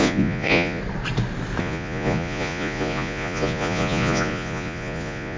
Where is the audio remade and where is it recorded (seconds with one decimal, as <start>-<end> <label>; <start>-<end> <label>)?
0.0-0.8 remade; 0.8-1.6 recorded; 1.6-5.4 remade